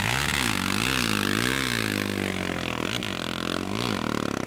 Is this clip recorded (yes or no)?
yes